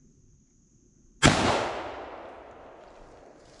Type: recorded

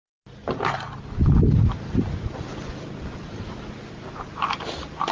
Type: recorded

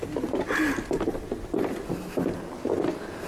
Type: recorded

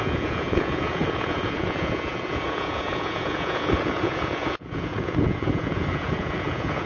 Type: remade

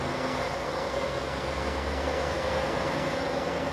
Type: remade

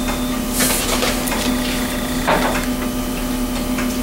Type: recorded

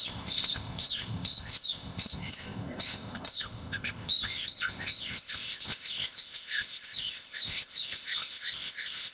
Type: remade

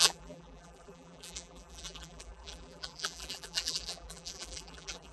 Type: remade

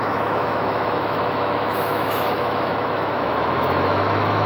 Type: remade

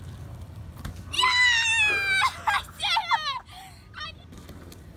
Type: recorded